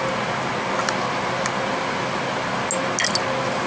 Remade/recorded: recorded